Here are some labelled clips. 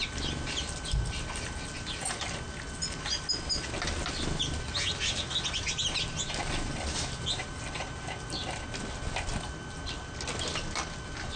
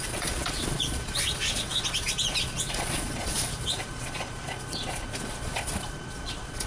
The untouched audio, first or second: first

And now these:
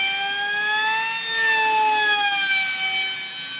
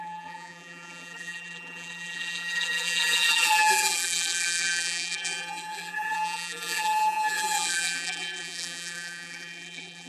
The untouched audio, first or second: first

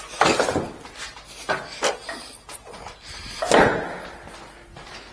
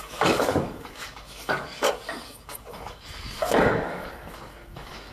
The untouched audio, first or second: first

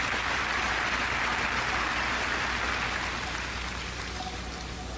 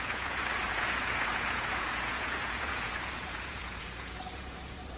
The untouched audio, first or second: first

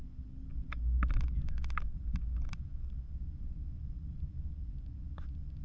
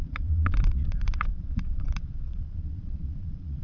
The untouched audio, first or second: first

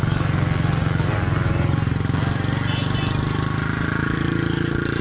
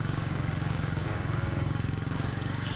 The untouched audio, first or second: first